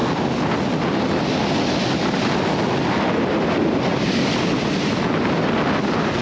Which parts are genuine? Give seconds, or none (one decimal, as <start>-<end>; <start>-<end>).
0.0-6.2